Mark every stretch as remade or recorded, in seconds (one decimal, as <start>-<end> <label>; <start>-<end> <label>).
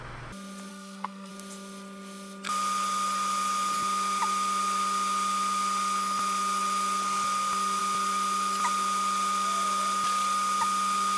0.0-0.7 recorded; 0.7-1.3 remade; 1.3-11.2 recorded